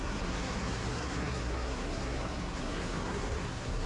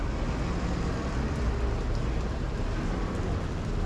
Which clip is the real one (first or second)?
second